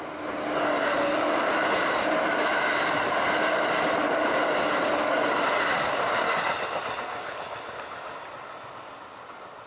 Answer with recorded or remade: recorded